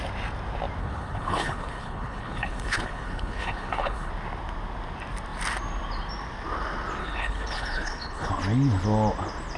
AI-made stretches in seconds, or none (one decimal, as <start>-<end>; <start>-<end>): 0.8-4.1; 7.0-8.3